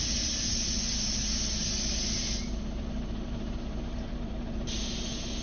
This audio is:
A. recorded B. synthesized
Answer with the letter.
A